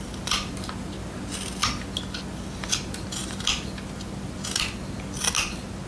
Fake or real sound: real